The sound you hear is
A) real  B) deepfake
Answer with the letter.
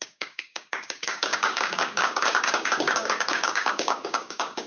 B